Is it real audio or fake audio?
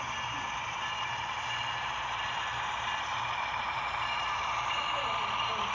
real